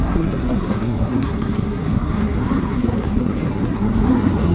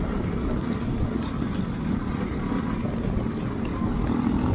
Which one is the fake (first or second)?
first